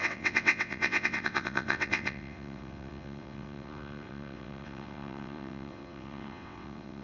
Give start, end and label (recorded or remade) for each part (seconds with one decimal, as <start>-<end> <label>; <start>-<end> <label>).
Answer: 0.0-7.0 remade